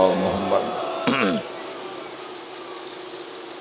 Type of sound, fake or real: real